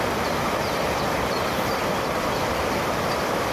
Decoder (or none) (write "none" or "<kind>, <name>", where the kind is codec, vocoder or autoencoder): none